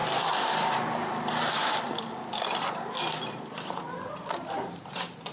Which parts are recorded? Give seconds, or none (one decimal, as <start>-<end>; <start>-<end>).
1.9-5.3